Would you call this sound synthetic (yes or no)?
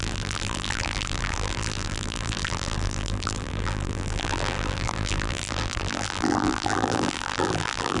yes